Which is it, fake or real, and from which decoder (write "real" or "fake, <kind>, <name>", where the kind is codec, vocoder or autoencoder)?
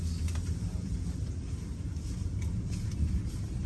fake, vocoder, BigVGAN v2